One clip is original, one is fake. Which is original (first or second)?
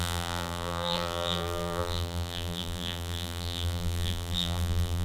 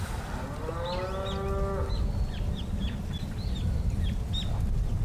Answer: second